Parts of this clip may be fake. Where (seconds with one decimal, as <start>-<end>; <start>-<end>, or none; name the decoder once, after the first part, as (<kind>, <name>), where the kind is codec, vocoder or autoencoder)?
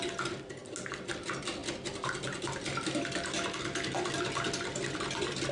none